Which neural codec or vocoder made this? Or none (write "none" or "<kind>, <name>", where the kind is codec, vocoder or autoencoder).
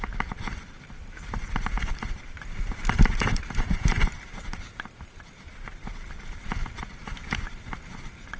none